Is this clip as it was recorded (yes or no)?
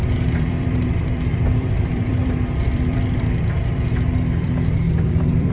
no